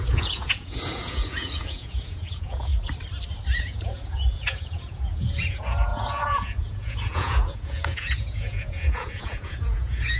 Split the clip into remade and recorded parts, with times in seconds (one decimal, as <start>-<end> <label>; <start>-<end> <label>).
0.0-2.7 remade; 2.7-3.6 recorded; 3.6-10.2 remade